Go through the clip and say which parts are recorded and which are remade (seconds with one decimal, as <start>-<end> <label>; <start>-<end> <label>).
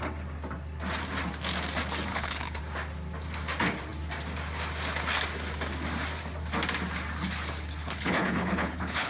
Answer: 0.0-2.1 recorded; 2.1-2.6 remade; 2.6-7.8 recorded; 7.8-9.1 remade